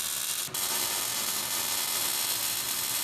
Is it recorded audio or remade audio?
recorded